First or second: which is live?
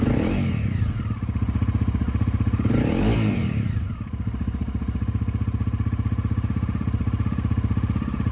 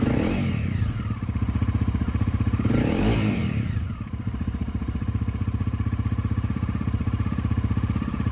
first